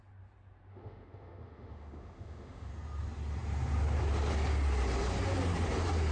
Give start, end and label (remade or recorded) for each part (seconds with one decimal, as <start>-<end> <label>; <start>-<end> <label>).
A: 0.0-0.7 recorded; 0.7-2.7 remade; 2.7-6.1 recorded